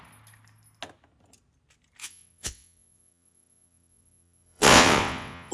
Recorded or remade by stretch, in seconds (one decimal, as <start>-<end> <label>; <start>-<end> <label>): 0.0-2.0 recorded; 2.0-5.5 remade